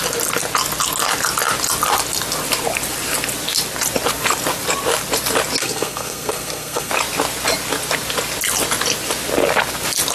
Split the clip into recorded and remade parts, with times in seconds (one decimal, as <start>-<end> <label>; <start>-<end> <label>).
0.0-5.6 recorded; 5.6-6.9 remade; 6.9-10.1 recorded